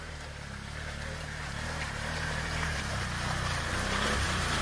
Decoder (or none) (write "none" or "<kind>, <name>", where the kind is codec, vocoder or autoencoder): vocoder, BigVGAN v2